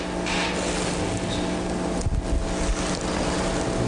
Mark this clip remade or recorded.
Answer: recorded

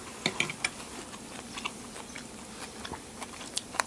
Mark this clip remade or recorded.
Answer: recorded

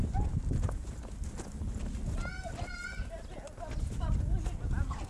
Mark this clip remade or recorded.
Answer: recorded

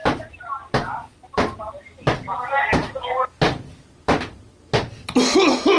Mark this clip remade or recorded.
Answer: recorded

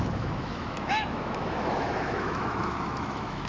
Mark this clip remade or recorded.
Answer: remade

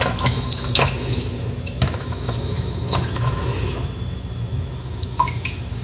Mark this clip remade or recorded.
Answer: remade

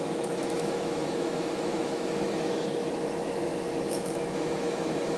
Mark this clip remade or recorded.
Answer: remade